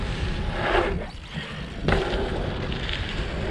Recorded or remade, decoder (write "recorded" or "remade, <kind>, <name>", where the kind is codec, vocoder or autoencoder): recorded